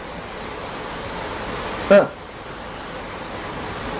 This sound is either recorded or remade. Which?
recorded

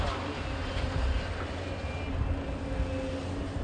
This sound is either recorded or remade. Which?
recorded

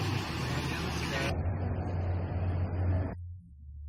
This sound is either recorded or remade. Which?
recorded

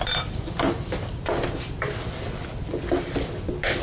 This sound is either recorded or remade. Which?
recorded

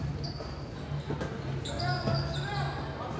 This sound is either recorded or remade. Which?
recorded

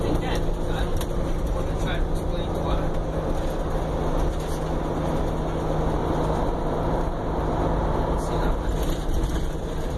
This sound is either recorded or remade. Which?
recorded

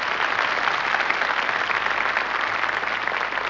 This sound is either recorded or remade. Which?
recorded